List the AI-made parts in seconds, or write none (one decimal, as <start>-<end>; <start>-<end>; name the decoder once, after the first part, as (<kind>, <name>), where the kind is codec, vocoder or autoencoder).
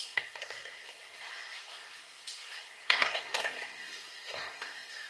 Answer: 0.0-5.1 (codec, SNAC)